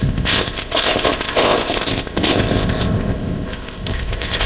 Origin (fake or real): fake